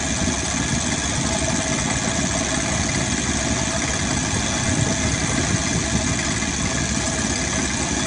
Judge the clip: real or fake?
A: real